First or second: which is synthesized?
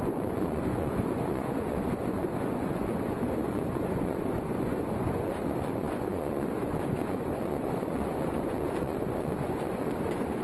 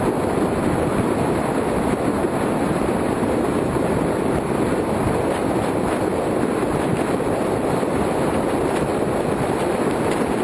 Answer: first